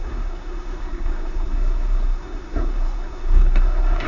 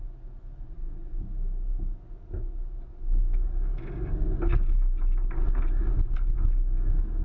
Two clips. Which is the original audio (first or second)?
second